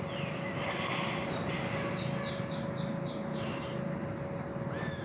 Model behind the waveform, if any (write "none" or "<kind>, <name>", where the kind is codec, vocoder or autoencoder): none